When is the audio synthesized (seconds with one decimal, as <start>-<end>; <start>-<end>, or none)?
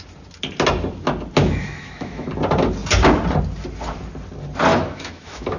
1.4-2.3; 4.7-5.6